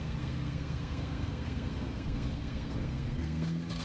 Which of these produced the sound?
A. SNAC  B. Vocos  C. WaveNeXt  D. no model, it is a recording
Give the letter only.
A